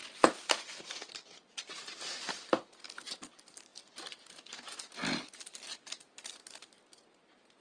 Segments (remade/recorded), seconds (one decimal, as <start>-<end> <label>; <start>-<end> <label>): 0.0-7.6 recorded